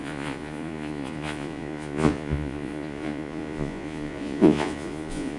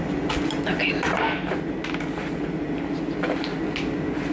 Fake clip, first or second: first